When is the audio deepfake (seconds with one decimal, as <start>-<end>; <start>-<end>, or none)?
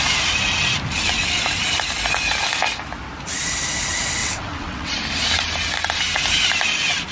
4.2-4.9